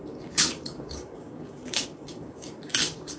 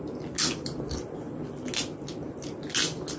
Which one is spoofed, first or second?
first